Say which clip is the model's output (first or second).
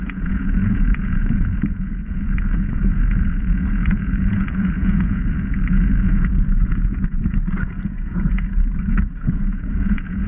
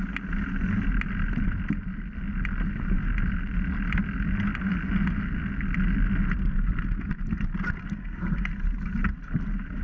first